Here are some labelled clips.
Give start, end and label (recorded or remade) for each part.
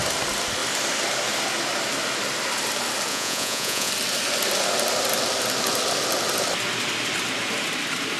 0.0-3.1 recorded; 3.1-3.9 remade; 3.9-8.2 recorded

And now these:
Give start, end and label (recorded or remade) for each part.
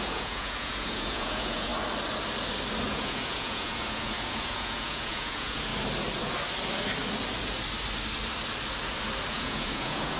0.0-1.7 remade; 1.7-2.9 recorded; 2.9-5.7 remade; 5.7-9.3 recorded; 9.3-10.2 remade